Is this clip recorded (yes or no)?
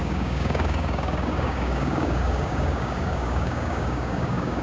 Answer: no